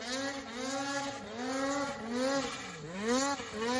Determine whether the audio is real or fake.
real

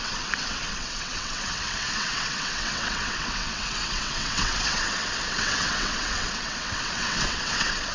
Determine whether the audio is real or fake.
fake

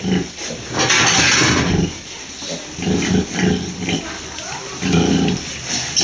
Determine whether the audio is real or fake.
real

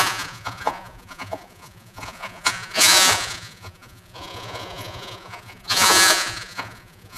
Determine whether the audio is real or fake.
fake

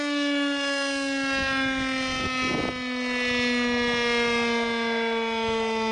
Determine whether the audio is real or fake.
real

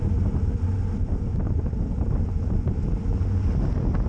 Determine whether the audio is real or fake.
real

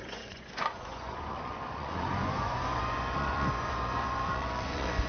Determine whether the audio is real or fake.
fake